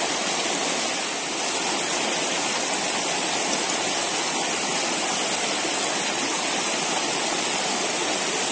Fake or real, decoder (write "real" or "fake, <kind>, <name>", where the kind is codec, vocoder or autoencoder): real